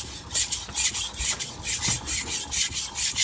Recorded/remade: recorded